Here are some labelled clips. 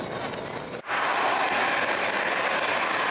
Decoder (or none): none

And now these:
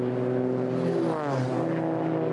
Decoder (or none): none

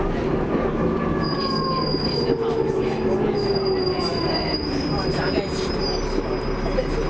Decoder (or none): none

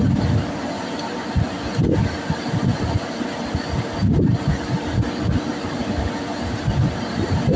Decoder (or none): none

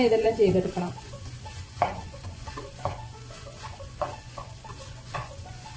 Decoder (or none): vocoder, Vocos